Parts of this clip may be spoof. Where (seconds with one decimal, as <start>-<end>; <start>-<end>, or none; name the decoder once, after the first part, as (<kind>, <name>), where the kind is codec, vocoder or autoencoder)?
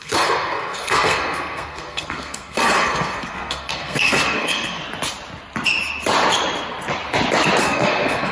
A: 0.0-4.8 (codec, SNAC); 7.6-8.3